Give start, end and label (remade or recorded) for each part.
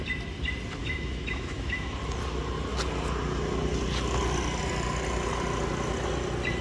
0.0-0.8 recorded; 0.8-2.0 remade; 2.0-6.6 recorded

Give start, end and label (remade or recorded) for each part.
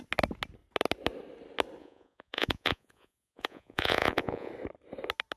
0.0-1.8 recorded; 1.8-4.5 remade; 4.5-5.4 recorded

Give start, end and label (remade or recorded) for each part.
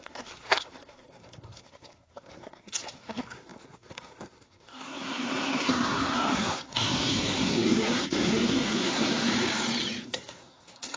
0.0-9.3 remade; 9.3-10.0 recorded; 10.0-11.0 remade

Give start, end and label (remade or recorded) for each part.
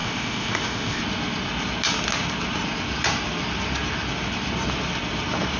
0.0-1.0 remade; 1.0-5.6 recorded